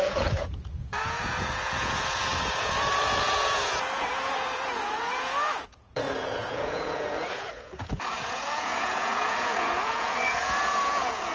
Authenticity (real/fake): fake